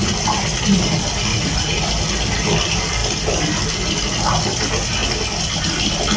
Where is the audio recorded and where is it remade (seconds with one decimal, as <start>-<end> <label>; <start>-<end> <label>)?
0.0-1.3 recorded; 1.3-1.9 remade; 1.9-6.2 recorded